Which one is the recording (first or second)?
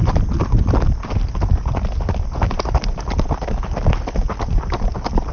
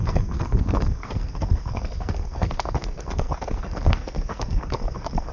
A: first